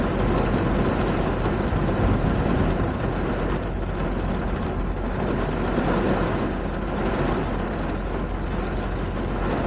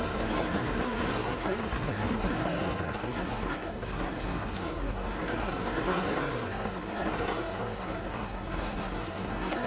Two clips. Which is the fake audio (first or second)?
second